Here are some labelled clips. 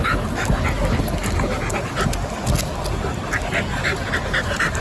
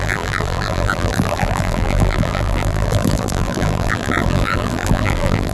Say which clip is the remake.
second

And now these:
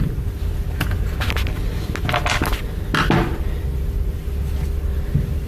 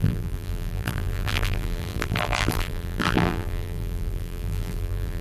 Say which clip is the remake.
second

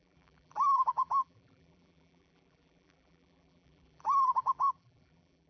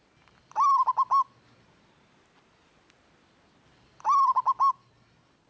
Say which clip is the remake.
first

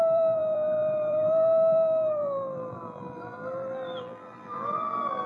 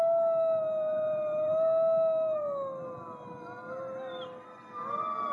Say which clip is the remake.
first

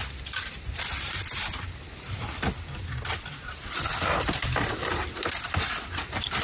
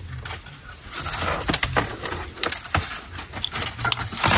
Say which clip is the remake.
first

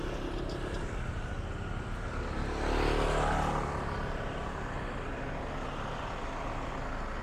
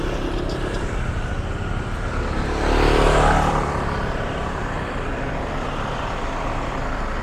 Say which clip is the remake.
second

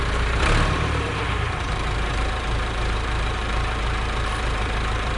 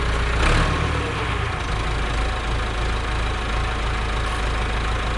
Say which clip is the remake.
first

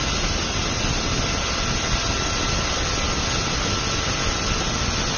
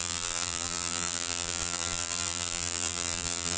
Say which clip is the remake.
second